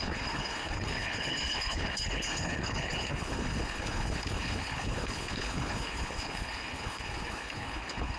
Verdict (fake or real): fake